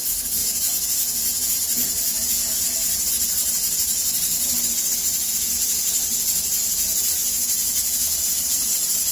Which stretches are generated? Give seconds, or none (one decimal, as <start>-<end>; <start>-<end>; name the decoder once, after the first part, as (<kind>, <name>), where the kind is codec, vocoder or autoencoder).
0.4-3.1 (vocoder, Vocos); 5.1-5.8; 6.6-8.2